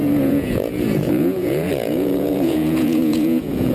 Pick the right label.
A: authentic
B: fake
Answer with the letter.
B